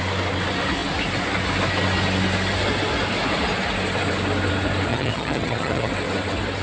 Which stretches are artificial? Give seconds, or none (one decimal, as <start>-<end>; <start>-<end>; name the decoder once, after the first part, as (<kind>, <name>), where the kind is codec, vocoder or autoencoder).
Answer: 4.9-5.9 (vocoder, HiFi-GAN)